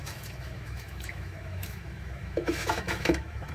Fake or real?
fake